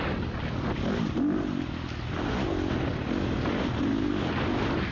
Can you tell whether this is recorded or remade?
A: recorded